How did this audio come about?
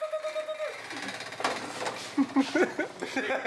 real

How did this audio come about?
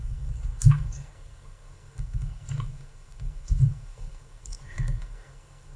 fake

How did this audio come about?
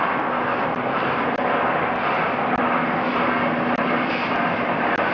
real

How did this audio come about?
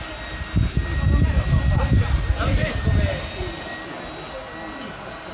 real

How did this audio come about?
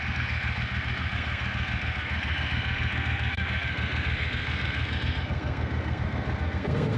fake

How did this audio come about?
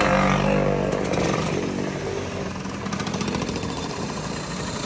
real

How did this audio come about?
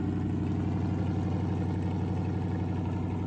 real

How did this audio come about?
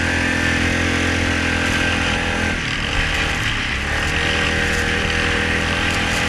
real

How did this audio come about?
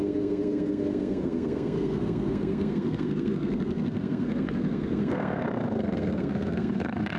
fake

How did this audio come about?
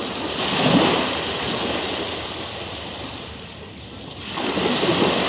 real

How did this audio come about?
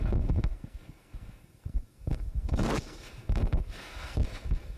fake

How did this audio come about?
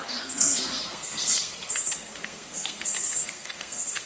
fake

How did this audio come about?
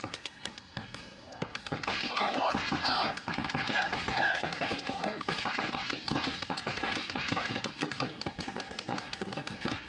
fake